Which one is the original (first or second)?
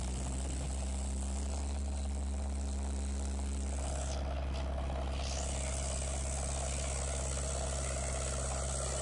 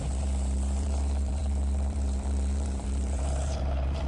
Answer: first